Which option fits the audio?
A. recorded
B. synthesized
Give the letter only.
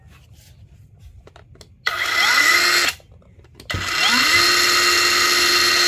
A